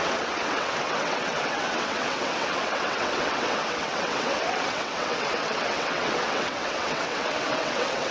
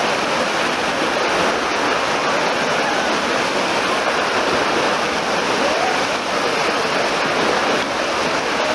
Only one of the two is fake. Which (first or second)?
first